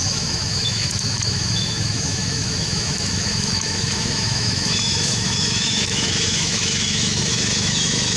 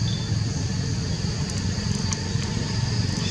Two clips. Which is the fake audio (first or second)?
first